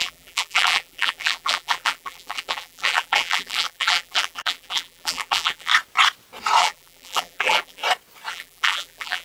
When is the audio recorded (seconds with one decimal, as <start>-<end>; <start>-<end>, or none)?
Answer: 5.7-6.6; 7.8-8.3